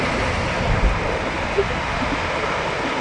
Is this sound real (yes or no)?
yes